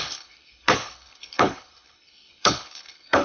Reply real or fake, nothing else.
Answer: fake